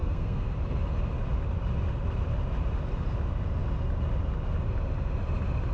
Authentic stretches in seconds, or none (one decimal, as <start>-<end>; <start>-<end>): 0.5-5.7